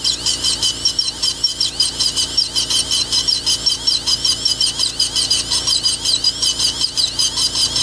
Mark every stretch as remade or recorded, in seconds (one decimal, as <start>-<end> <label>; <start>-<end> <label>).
0.0-1.2 recorded; 1.2-1.9 remade; 1.9-7.8 recorded